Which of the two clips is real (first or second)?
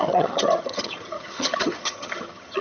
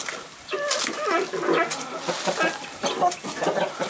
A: second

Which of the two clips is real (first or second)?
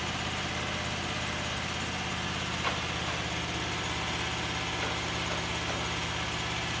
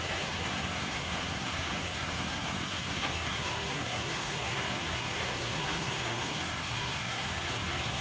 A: first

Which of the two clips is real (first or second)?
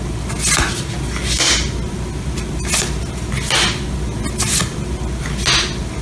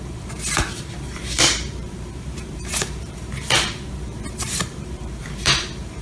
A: first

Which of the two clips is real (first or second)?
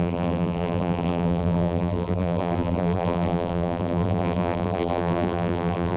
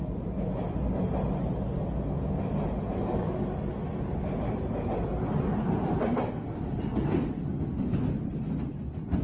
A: second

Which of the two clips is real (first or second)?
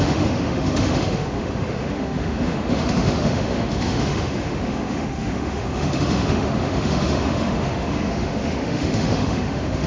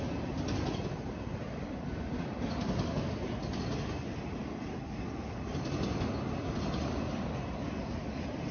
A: second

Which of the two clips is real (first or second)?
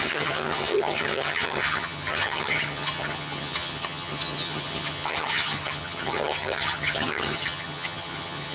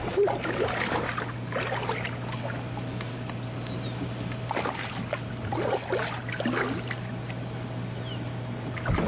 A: second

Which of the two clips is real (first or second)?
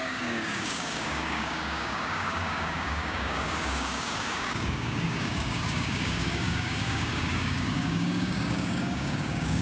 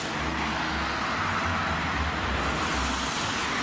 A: second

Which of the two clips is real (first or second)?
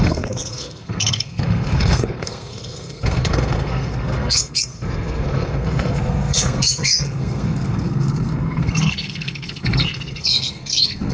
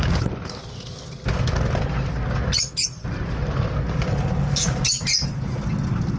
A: second